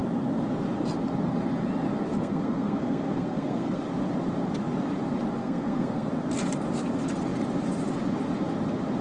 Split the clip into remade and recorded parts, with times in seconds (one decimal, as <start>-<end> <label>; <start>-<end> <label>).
0.0-2.1 recorded; 2.1-3.8 remade; 3.8-5.4 recorded; 5.4-6.1 remade; 6.1-9.0 recorded